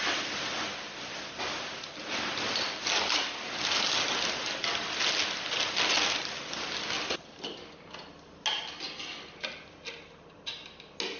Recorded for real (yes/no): yes